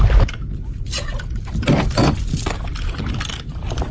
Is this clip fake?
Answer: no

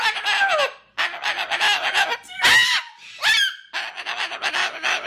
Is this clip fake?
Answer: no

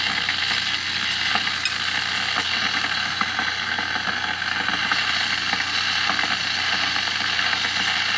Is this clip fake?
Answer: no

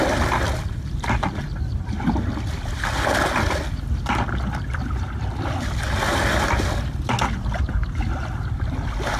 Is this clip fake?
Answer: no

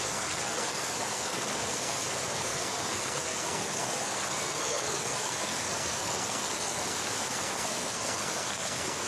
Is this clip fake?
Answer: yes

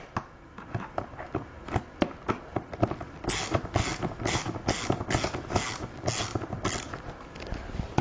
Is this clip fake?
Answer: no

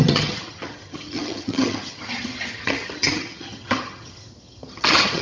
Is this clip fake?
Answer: yes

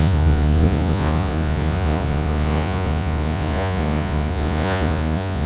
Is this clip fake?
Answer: yes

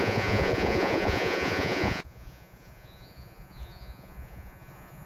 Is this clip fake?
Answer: yes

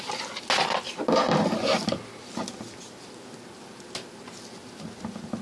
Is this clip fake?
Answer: no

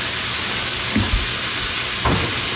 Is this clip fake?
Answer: no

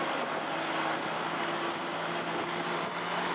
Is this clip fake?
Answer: no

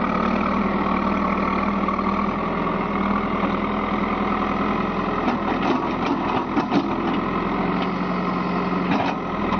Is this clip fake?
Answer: no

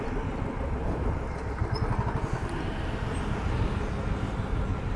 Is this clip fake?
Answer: no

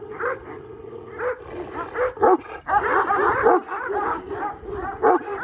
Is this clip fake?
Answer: no